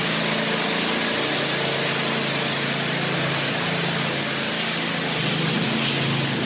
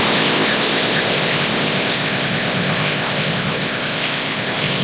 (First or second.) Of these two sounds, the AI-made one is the second